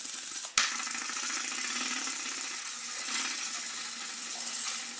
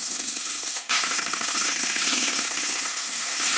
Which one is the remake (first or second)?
second